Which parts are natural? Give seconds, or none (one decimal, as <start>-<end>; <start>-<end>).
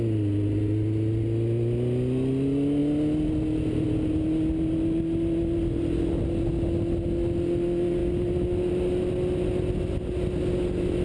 0.0-11.0